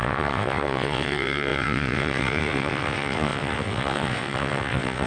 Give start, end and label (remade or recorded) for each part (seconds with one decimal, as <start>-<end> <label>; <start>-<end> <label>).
0.0-5.1 remade